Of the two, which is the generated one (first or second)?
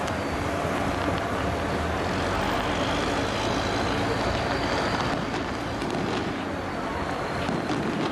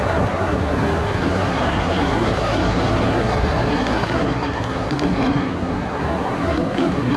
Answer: second